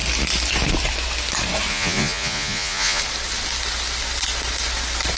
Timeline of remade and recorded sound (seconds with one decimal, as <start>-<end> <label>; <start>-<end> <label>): 0.0-1.7 recorded; 1.7-3.0 remade; 3.0-5.2 recorded